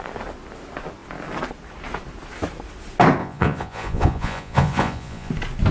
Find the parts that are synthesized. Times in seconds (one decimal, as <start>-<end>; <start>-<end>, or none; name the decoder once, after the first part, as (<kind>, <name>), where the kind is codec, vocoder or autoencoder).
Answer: 3.2-5.3 (vocoder, Vocos)